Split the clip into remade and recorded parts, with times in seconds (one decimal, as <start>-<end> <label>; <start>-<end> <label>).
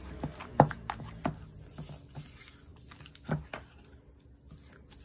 0.0-5.0 recorded